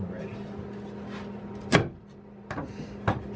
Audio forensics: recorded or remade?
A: recorded